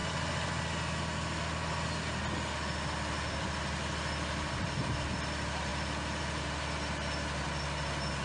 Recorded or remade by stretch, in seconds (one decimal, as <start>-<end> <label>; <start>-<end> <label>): 0.0-8.2 recorded